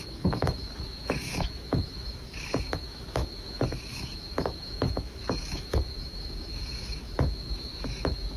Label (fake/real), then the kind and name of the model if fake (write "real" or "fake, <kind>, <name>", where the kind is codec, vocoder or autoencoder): fake, autoencoder, DAC-VAE